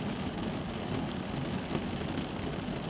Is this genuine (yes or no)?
yes